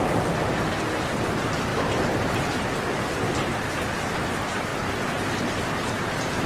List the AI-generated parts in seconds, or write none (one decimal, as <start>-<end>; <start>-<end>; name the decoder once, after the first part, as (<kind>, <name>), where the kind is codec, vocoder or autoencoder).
1.7-2.6 (vocoder, BigVGAN v2)